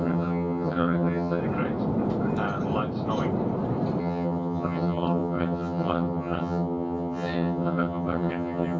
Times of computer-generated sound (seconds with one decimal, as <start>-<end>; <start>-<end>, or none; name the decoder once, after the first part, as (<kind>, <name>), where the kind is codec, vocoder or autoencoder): 0.0-1.4 (vocoder, HiFi-GAN); 4.0-8.8